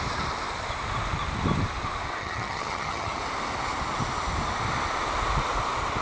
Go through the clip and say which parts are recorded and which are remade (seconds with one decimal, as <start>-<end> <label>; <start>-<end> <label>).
0.0-2.2 recorded; 2.2-3.2 remade; 3.2-6.0 recorded